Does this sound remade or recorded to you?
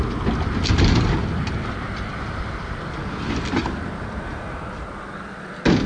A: recorded